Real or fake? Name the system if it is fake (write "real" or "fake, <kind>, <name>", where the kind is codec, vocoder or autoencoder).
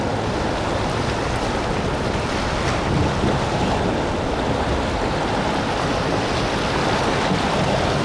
real